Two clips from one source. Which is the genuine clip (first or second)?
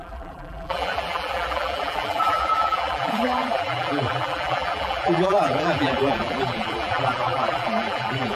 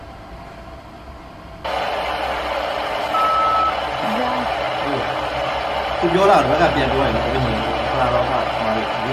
second